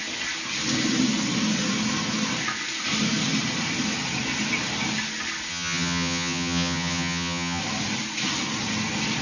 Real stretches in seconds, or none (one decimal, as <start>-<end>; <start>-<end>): 0.0-5.5; 7.6-9.2